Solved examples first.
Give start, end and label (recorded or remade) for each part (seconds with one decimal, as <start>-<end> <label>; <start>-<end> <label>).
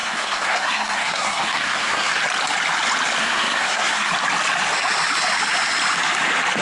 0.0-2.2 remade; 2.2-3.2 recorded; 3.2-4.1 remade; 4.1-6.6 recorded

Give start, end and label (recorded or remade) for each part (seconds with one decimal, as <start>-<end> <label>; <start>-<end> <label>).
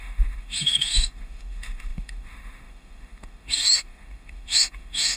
0.0-5.2 remade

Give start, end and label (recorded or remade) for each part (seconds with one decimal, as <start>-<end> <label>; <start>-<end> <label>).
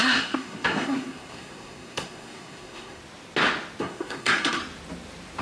0.0-3.0 remade; 3.0-3.8 recorded; 3.8-4.6 remade; 4.6-5.4 recorded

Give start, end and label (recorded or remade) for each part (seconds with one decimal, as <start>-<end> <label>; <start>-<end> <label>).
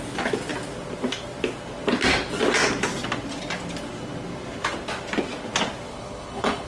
0.0-5.9 recorded; 5.9-6.7 remade